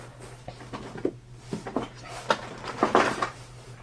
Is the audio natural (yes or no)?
yes